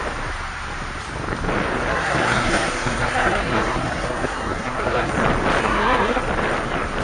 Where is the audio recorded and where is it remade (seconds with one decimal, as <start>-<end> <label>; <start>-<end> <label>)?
0.0-1.9 recorded; 1.9-5.1 remade; 5.1-5.6 recorded; 5.6-6.2 remade; 6.2-7.0 recorded